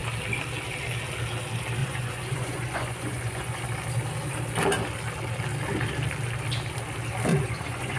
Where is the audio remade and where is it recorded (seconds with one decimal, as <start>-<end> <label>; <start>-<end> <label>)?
0.0-1.8 recorded; 1.8-3.6 remade; 3.6-7.3 recorded; 7.3-8.0 remade